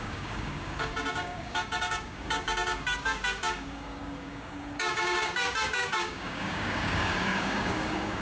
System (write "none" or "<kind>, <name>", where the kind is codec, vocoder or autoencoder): codec, DAC